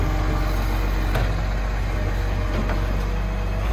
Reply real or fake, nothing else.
real